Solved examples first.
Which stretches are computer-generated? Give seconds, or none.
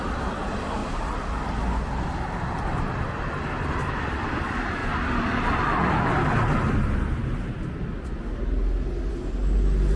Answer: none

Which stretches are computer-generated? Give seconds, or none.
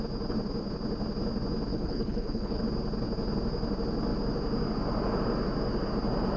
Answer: 1.7-2.6 (codec, HILCodec)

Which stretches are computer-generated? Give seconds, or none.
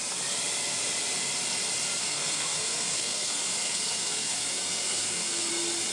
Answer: 2.0-5.5 (codec, SNAC)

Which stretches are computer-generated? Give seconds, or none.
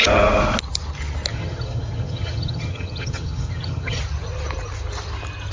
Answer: 1.3-4.0 (vocoder, HiFi-GAN)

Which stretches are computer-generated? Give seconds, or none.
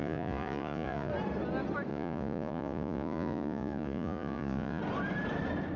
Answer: 0.0-1.1 (vocoder, Vocos); 1.9-4.8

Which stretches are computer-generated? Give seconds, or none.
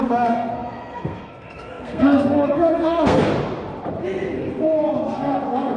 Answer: 0.0-3.3 (codec, SNAC); 4.0-5.8